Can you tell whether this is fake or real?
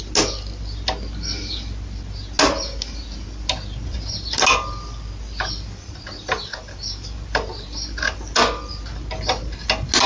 real